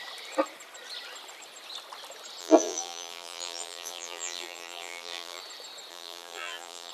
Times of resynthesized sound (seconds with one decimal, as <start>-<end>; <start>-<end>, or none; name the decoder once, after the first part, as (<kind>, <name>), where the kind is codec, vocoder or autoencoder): 2.4-5.4 (vocoder, BigVGAN v2); 5.9-6.9